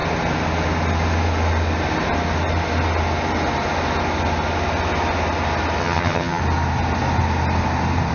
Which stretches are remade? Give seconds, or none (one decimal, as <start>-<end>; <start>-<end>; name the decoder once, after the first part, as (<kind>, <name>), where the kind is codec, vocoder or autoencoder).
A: 5.8-6.4 (vocoder, HiFi-GAN)